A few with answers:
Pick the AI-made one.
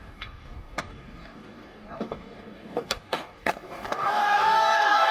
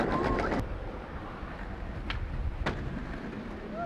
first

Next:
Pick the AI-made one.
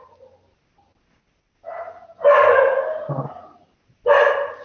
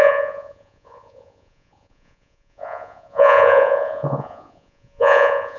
second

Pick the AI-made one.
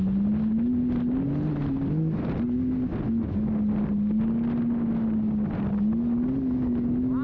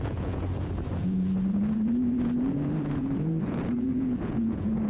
second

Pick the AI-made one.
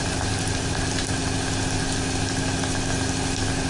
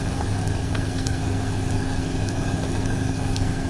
second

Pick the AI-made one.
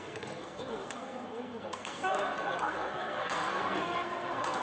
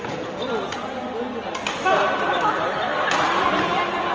first